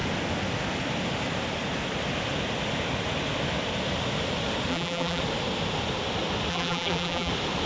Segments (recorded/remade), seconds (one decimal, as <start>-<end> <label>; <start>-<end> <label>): 0.0-4.7 recorded; 4.7-5.2 remade; 5.2-6.5 recorded; 6.5-7.3 remade; 7.3-7.7 recorded